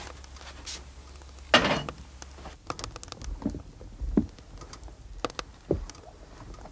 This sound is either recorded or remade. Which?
recorded